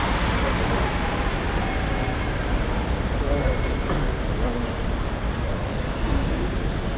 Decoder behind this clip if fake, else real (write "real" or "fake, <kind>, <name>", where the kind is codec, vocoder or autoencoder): real